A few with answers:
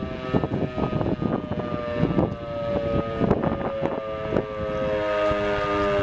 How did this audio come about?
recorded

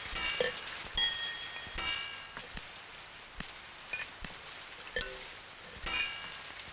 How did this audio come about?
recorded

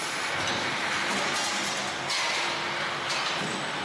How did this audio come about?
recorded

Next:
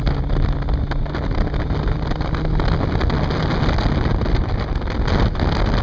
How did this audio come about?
recorded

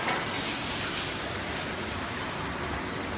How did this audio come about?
recorded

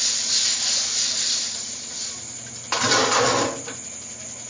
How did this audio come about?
recorded